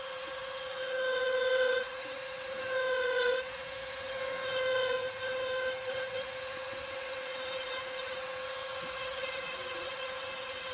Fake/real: fake